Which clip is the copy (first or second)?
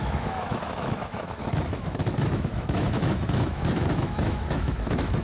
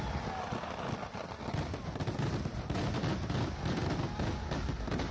first